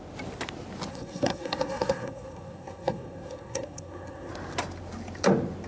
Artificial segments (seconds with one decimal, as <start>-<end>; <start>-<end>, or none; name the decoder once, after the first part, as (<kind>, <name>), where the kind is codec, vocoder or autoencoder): 0.9-4.3 (codec, SNAC)